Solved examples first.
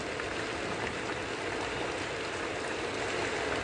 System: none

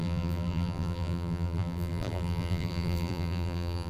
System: vocoder, BigVGAN v2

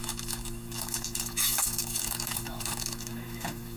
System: autoencoder, DAC-VAE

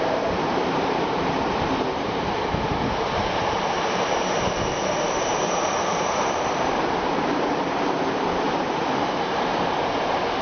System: vocoder, BigVGAN v2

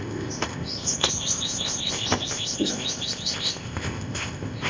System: codec, ZipCodec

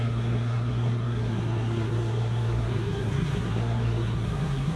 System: codec, SNAC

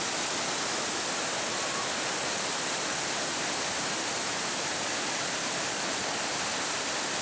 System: none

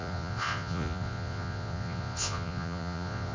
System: vocoder, Vocos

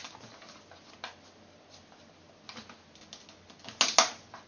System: none